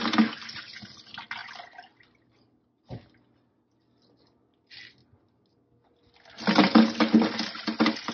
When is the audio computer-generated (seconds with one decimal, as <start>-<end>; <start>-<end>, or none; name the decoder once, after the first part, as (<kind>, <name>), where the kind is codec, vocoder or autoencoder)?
none